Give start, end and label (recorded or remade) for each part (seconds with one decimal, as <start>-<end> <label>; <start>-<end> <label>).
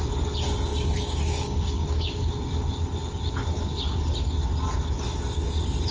0.0-0.7 recorded; 0.7-2.3 remade; 2.3-5.9 recorded